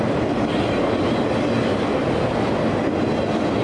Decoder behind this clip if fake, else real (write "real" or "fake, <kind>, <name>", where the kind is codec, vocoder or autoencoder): real